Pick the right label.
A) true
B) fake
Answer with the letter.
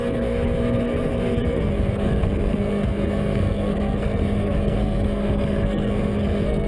B